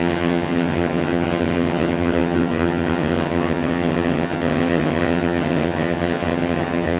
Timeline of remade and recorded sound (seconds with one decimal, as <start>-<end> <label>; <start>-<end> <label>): 0.0-7.0 remade